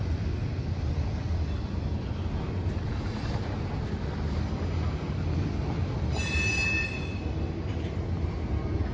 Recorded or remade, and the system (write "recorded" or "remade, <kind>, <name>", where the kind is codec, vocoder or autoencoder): recorded